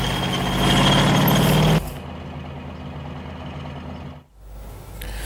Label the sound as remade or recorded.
recorded